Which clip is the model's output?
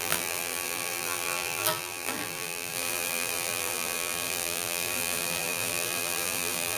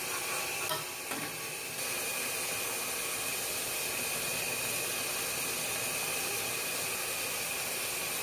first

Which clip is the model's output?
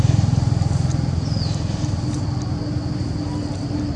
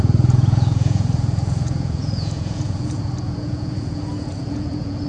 second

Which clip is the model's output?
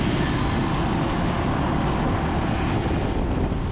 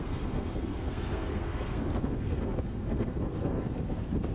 second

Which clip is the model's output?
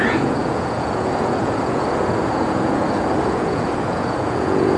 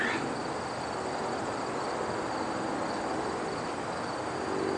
first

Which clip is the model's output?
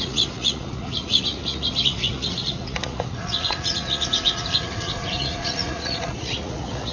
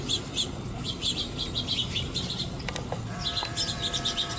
first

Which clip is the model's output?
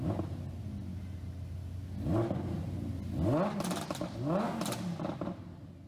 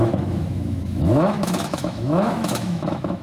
second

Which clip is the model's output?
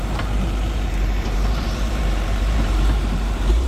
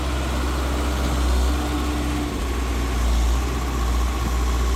first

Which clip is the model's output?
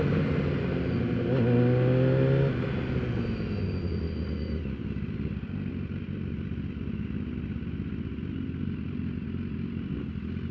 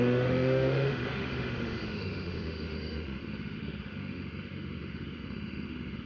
second